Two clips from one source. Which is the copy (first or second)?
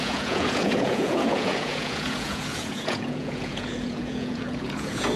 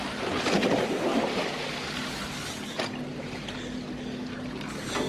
first